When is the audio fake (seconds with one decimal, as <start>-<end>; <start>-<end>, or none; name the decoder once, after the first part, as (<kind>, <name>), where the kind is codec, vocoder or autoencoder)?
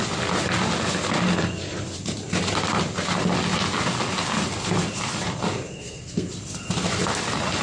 5.7-6.3 (codec, SNAC)